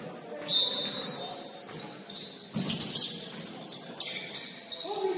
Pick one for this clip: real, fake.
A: real